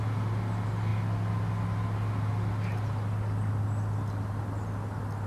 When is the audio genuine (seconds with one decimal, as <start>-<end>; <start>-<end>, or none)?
0.0-5.3

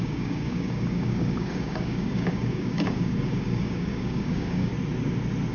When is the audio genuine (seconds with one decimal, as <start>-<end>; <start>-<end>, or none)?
4.7-5.5

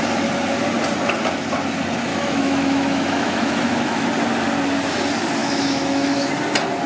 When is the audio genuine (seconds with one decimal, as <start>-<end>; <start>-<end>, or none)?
0.0-2.1; 4.1-5.4; 6.3-6.9

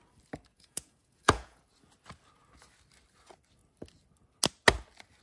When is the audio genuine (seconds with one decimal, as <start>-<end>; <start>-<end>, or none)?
0.0-0.5; 1.6-5.2